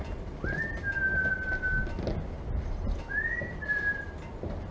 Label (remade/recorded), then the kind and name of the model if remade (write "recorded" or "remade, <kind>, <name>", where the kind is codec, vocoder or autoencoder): recorded